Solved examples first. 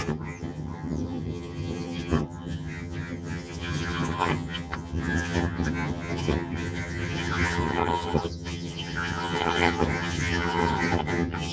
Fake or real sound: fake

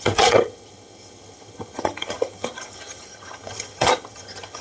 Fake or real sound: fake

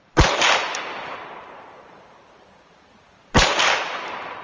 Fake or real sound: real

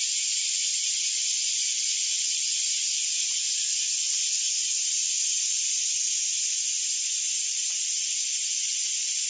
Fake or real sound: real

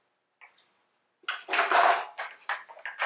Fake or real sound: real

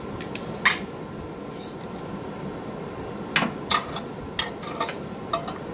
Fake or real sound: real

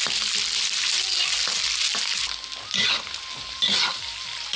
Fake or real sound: real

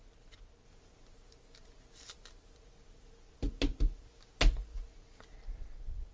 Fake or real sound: real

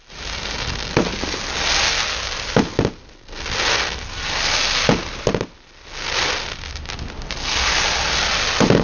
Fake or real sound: real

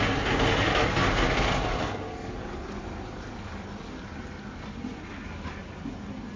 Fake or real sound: real